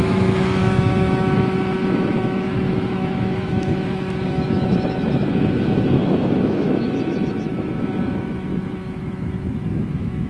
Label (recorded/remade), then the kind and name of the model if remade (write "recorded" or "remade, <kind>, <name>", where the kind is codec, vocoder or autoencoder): remade, autoencoder, DAC-VAE